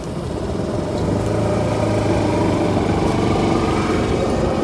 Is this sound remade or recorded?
recorded